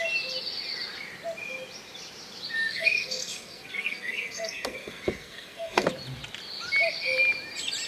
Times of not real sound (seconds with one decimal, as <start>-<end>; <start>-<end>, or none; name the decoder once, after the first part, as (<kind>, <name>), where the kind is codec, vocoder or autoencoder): 2.7-5.9 (codec, SNAC)